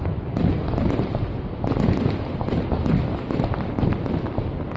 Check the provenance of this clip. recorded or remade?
recorded